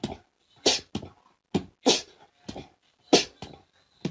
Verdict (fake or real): real